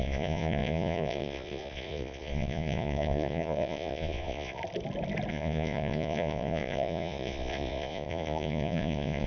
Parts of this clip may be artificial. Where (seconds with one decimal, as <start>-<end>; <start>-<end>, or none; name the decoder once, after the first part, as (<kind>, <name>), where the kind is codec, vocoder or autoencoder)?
0.0-4.6 (vocoder, Vocos); 5.3-9.3